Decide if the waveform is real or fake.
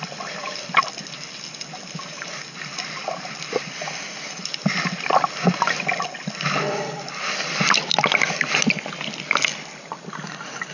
real